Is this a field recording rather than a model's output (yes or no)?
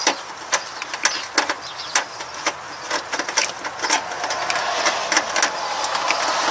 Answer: yes